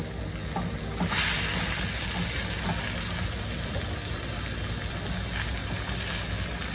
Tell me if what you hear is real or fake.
real